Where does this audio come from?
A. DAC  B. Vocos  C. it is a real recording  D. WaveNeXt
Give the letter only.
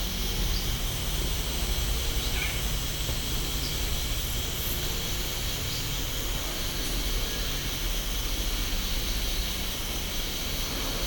C